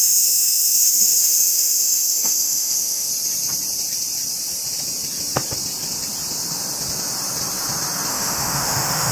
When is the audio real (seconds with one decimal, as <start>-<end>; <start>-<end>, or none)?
3.1-8.1